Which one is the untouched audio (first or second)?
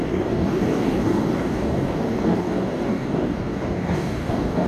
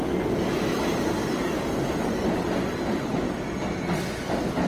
second